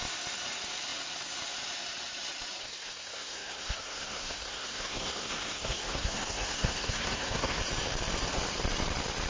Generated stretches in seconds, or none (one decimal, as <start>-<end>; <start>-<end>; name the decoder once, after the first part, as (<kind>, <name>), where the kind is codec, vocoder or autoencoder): 2.6-7.6 (codec, SNAC)